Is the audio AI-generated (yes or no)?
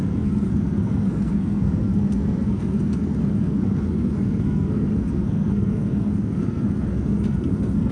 yes